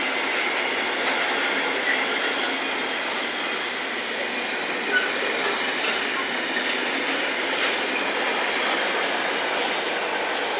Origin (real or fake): real